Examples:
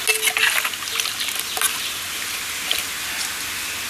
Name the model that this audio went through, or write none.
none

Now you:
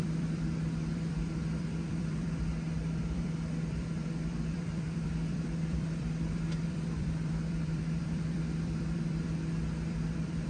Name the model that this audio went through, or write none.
vocoder, BigVGAN v2